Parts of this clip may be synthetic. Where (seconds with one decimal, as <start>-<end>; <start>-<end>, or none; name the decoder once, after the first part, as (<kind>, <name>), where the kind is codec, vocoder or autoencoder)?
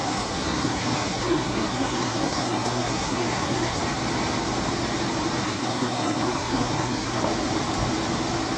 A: 0.0-3.8 (codec, SNAC); 5.4-7.2